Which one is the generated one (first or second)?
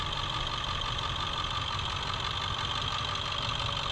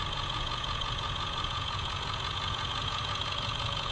second